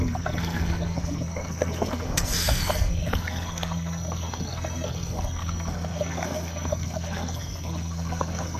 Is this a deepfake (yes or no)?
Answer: yes